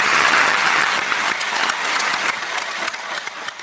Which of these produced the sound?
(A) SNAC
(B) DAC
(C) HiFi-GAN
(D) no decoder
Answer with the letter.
C